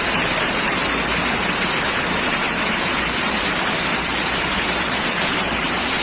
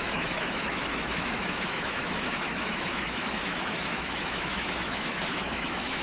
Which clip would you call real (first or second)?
first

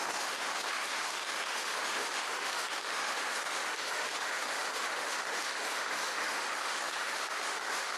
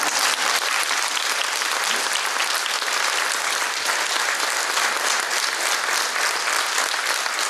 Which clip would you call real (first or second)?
second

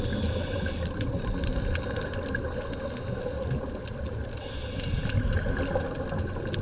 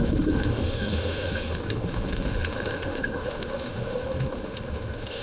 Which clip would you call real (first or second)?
first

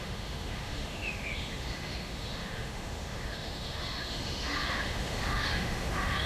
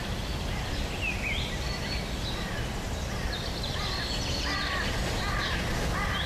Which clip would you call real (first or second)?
second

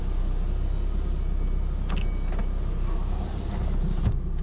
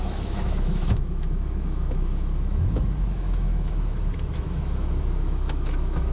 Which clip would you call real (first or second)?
first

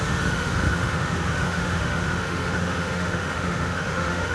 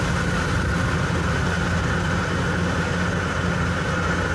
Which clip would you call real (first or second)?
second